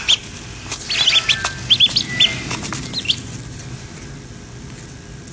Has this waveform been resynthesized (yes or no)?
no